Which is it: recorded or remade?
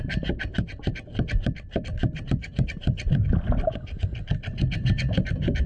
recorded